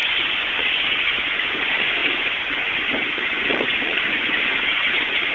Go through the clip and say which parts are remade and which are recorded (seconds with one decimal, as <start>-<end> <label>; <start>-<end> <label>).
0.0-5.3 remade